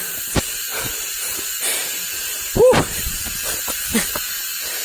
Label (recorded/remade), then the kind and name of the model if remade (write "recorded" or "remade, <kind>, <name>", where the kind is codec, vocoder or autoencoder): recorded